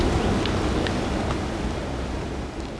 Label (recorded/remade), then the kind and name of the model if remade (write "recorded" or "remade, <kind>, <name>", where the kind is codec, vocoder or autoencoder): recorded